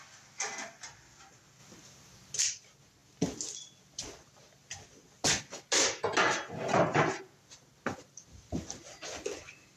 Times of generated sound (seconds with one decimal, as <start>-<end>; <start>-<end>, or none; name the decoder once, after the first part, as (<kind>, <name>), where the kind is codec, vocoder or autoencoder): none